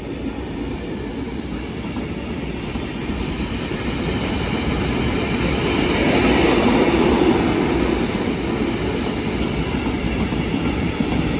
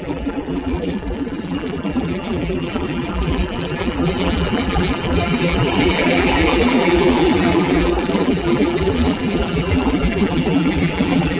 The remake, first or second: second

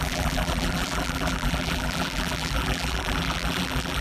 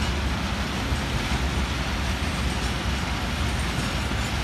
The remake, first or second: first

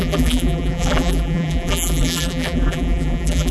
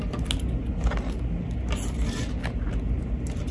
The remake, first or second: first